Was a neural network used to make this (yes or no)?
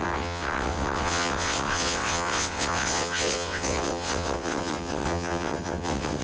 yes